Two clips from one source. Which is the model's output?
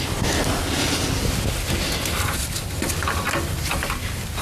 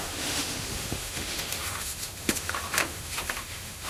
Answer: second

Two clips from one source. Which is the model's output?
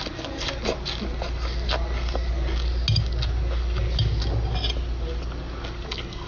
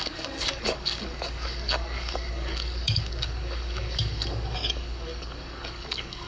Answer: second